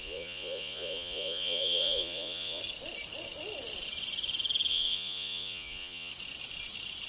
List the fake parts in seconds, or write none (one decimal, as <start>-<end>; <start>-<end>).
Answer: 0.0-2.6; 4.7-6.1